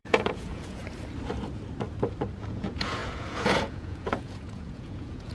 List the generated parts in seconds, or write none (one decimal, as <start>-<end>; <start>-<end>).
0.0-0.8; 2.4-5.3